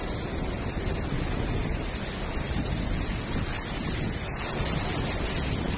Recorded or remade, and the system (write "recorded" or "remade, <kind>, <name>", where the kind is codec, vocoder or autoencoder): recorded